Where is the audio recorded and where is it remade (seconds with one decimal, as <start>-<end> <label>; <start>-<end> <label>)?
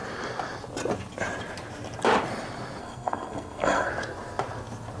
0.0-2.8 recorded; 2.8-3.9 remade; 3.9-5.0 recorded